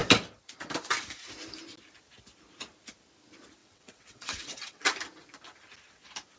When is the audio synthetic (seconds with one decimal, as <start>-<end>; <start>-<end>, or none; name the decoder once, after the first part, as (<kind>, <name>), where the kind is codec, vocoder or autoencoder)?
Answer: 3.6-4.9 (vocoder, WaveNeXt)